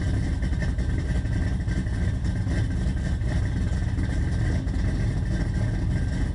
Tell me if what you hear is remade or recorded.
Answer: recorded